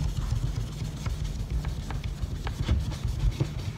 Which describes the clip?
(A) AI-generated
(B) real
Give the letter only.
B